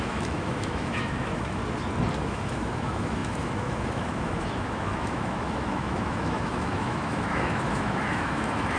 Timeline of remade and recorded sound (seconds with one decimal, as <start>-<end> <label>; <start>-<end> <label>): 0.0-1.6 remade; 1.6-2.2 recorded; 2.2-8.8 remade